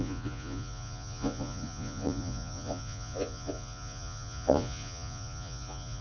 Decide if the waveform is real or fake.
fake